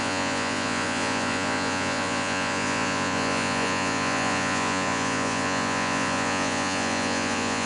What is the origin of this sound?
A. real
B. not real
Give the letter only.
B